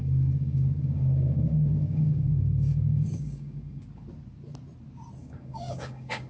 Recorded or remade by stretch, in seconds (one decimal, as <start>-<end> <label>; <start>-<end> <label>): 0.0-3.8 remade; 3.8-5.2 recorded; 5.2-6.3 remade